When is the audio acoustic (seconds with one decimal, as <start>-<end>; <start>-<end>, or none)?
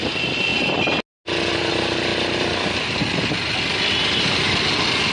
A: 0.0-5.1